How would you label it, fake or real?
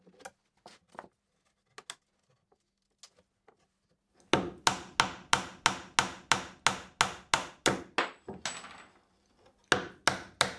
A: real